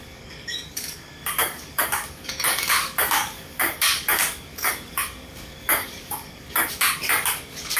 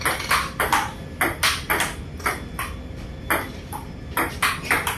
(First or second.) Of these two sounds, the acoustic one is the second